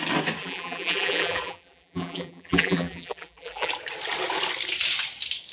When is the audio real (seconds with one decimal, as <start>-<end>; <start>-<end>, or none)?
0.0-0.4; 3.7-5.5

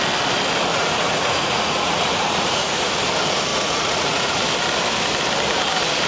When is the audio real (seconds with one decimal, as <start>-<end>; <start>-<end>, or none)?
0.0-0.7; 2.9-3.5; 4.4-6.1